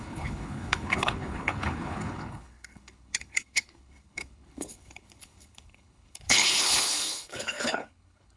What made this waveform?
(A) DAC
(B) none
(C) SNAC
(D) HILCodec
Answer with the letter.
D